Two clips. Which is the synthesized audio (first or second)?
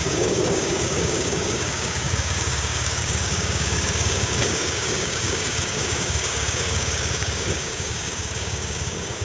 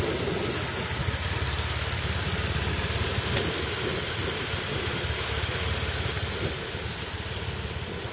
first